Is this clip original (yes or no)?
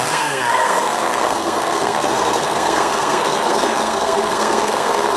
no